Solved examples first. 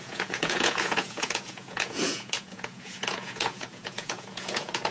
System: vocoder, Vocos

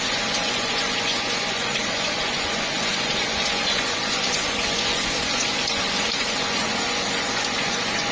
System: vocoder, Vocos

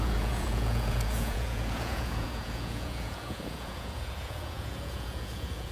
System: vocoder, Vocos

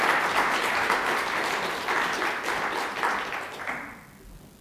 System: none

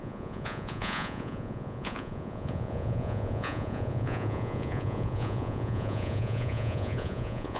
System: vocoder, Vocos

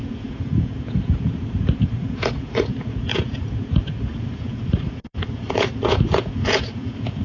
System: vocoder, Vocos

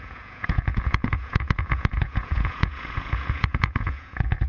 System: vocoder, Vocos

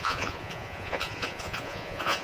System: vocoder, Vocos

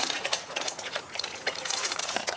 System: vocoder, Vocos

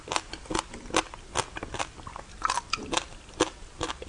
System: none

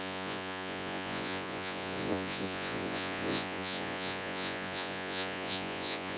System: vocoder, Vocos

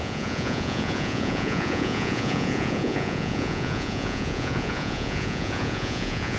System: vocoder, Vocos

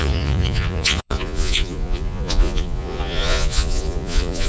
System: vocoder, Vocos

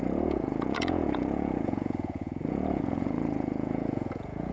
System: vocoder, Vocos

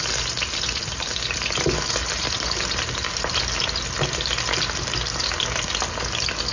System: none